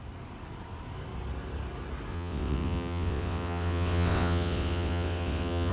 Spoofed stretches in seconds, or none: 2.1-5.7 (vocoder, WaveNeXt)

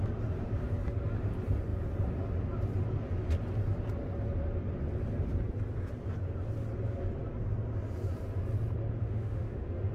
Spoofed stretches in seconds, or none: 9.0-9.9 (autoencoder, DAC-VAE)

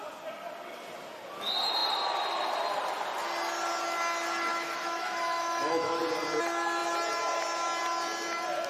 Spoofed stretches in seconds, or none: 4.5-6.0 (autoencoder, DAC-VAE)

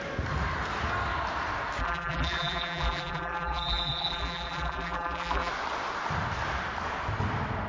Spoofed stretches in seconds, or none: 1.8-5.5 (vocoder, BigVGAN v2)

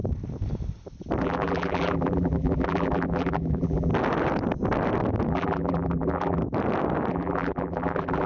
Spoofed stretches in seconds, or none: 1.2-3.9 (vocoder, BigVGAN v2); 5.3-6.4; 7.1-8.3

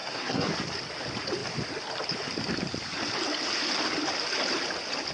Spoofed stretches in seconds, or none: 0.0-0.5 (codec, SNAC)

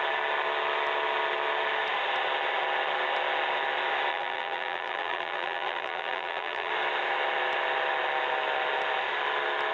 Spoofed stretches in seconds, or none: 4.1-6.7 (vocoder, BigVGAN v2)

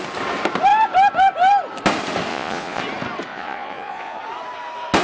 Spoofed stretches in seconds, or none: 2.3-2.8 (vocoder, Vocos); 3.3-4.2